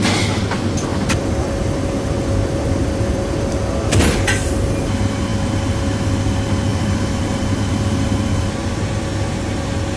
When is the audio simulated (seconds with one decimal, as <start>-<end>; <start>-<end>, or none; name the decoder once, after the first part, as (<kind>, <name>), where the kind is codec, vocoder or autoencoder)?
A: 0.9-3.6 (vocoder, BigVGAN v2); 6.7-8.1